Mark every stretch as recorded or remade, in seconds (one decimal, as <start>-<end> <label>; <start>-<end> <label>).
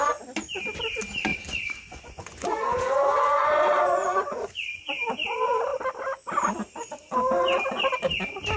0.0-1.3 recorded; 1.3-4.9 remade; 4.9-8.6 recorded